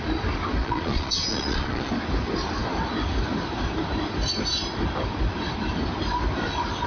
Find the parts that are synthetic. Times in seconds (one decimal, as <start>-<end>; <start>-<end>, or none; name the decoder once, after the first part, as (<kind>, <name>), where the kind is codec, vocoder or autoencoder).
0.6-1.9 (vocoder, Vocos)

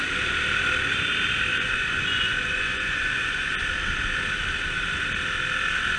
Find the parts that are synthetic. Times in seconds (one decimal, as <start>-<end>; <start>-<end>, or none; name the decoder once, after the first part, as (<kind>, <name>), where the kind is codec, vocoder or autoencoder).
1.5-3.5 (vocoder, Vocos)

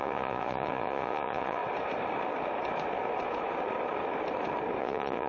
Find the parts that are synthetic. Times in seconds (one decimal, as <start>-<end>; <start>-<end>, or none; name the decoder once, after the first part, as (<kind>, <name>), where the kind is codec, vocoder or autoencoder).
0.0-1.6 (vocoder, Vocos); 4.8-5.3

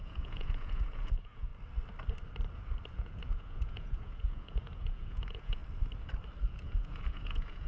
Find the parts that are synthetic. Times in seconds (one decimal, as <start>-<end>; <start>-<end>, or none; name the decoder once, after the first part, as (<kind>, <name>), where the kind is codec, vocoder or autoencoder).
0.0-1.5 (vocoder, Vocos); 2.9-5.6; 6.4-7.7

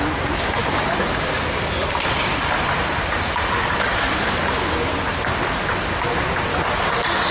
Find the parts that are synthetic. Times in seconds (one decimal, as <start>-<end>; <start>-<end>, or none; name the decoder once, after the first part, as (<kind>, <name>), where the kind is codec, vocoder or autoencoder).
none

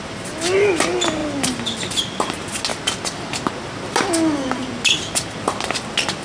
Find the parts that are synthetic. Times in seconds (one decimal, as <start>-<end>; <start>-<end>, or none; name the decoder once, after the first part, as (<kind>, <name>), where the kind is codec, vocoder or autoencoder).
none

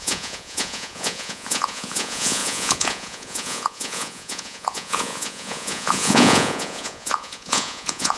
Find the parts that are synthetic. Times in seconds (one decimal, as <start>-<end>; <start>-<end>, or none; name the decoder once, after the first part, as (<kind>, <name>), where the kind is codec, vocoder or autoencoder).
0.0-8.2 (vocoder, Vocos)